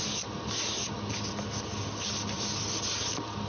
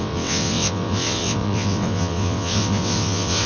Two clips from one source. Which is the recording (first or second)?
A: first